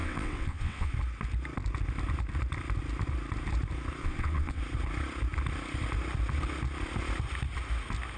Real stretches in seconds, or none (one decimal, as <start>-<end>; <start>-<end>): 0.9-4.0; 4.6-8.2